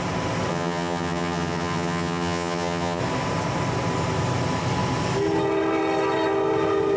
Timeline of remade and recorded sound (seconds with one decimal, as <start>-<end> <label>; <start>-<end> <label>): 0.0-0.5 recorded; 0.5-3.0 remade; 3.0-7.0 recorded